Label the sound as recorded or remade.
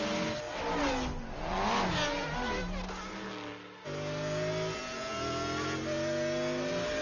recorded